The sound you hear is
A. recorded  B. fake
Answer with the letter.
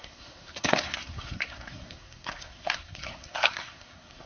B